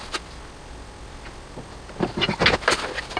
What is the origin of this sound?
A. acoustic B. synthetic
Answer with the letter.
A